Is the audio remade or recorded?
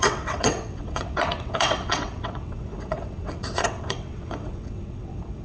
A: remade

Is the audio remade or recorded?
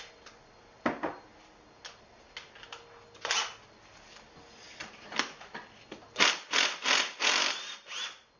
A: recorded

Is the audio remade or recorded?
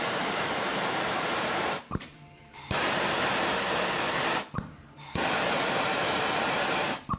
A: remade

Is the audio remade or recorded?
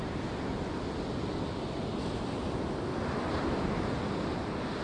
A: recorded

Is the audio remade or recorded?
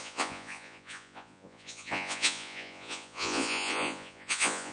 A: remade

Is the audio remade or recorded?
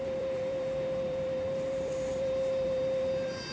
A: remade